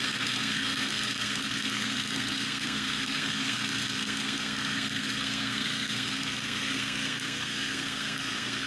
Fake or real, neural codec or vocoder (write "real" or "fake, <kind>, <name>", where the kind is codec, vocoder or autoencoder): fake, codec, SNAC